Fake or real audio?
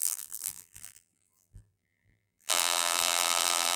fake